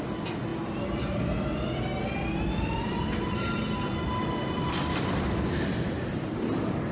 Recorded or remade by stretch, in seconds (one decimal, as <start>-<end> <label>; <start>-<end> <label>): 0.0-0.5 remade; 0.5-1.2 recorded; 1.2-1.9 remade; 1.9-2.4 recorded; 2.4-6.9 remade